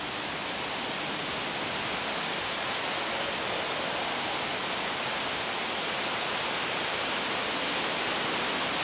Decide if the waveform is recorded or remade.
recorded